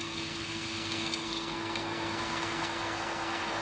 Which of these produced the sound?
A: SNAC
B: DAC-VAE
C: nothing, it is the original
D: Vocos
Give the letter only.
A